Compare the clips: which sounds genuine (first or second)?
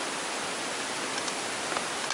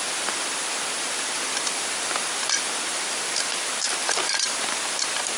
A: first